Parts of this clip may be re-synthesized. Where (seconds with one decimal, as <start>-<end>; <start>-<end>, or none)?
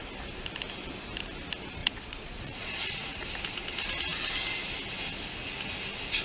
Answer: 1.8-3.2